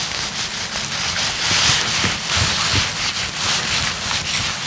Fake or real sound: real